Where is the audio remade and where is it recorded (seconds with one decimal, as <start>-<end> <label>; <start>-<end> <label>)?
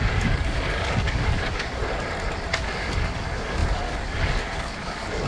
0.0-1.8 remade; 1.8-2.5 recorded; 2.5-5.3 remade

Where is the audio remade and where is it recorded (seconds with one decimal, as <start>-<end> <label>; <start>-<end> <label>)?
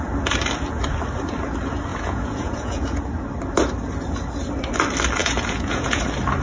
0.0-1.9 recorded; 1.9-3.0 remade; 3.0-5.2 recorded; 5.2-6.0 remade; 6.0-6.4 recorded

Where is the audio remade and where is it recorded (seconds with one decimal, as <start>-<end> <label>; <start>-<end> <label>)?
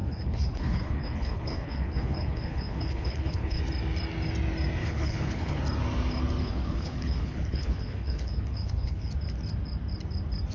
0.0-3.6 remade; 3.6-4.8 recorded; 4.8-5.6 remade; 5.6-6.4 recorded; 6.4-9.1 remade; 9.1-10.5 recorded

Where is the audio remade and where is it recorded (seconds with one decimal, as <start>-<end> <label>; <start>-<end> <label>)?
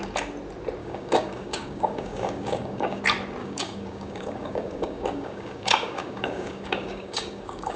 0.0-0.8 recorded; 0.8-3.0 remade; 3.0-3.4 recorded; 3.4-7.8 remade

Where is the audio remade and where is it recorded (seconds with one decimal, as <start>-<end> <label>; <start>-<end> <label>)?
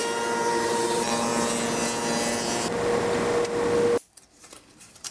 0.0-1.3 remade; 1.3-4.4 recorded; 4.4-5.1 remade